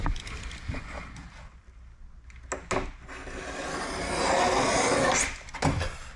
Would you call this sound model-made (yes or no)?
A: no